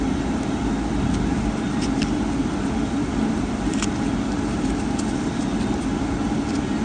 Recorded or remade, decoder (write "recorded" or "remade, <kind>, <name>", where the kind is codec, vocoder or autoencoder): recorded